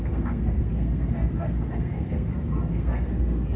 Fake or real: fake